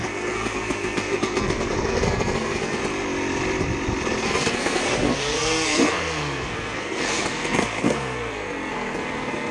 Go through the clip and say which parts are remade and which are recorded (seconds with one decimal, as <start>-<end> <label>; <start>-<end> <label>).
0.0-2.8 remade; 2.8-4.2 recorded; 4.2-9.5 remade